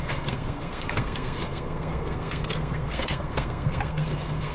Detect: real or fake fake